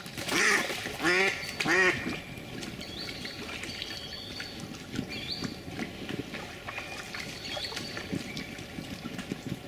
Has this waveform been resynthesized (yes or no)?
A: no